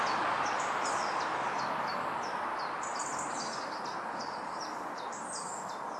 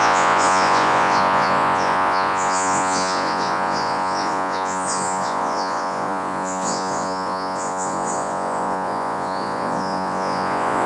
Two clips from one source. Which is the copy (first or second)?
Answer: second